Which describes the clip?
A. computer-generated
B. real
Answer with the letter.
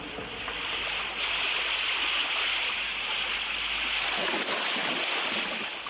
B